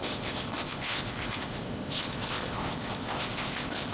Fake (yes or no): yes